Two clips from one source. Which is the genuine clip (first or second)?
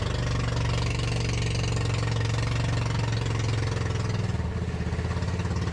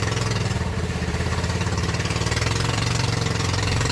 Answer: first